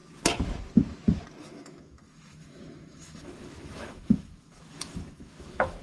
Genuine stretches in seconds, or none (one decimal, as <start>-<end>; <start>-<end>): 0.0-1.4